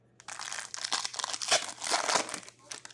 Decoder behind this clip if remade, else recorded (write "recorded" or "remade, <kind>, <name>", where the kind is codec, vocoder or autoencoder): recorded